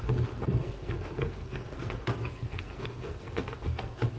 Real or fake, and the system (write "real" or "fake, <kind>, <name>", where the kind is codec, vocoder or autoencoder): fake, codec, SNAC